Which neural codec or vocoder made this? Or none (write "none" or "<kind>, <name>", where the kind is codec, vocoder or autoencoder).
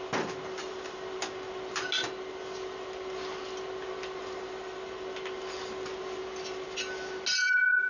none